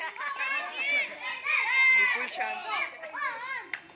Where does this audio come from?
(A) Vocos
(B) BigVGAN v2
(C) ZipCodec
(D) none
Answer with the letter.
D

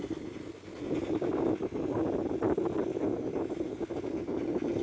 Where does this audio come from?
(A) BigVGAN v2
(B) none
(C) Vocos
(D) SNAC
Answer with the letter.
B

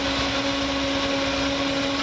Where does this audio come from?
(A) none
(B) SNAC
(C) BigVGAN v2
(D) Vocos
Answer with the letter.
A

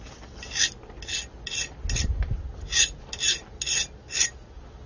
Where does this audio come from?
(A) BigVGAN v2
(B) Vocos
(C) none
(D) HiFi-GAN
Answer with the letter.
C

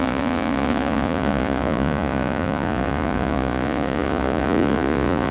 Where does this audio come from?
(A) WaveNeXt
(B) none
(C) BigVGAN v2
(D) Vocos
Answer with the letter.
D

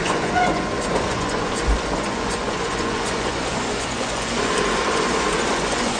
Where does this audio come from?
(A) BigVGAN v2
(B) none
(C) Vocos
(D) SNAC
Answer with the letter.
C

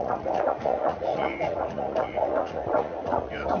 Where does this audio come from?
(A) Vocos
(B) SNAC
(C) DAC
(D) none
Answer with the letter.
A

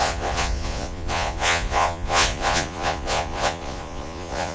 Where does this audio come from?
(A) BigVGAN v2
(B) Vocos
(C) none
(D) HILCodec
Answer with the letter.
B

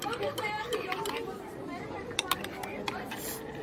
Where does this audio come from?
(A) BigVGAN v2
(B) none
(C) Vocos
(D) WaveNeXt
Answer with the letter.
B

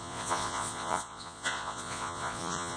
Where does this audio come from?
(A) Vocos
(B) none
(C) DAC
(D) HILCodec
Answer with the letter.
A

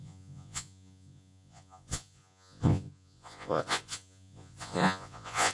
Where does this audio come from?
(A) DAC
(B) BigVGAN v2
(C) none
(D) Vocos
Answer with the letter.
D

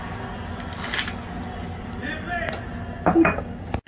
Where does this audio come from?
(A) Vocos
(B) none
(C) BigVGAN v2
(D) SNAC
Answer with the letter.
B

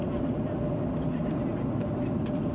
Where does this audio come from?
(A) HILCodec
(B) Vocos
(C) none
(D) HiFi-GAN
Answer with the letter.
C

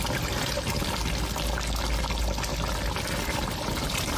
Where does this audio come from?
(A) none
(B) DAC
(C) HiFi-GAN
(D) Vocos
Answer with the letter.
A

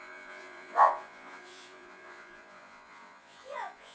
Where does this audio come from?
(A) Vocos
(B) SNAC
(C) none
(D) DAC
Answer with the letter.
A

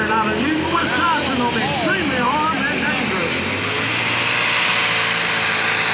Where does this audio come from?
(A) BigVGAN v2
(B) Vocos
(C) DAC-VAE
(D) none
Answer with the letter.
D